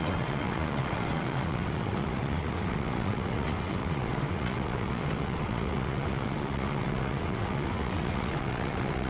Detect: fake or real fake